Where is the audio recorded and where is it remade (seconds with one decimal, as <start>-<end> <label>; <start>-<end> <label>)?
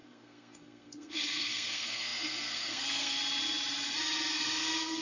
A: 0.0-3.2 remade; 3.2-4.3 recorded; 4.3-5.0 remade